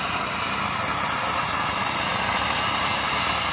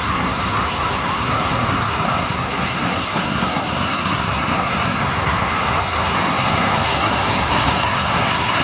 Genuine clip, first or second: first